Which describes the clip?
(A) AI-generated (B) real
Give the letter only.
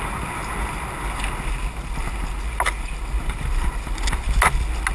B